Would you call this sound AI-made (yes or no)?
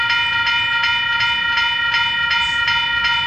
no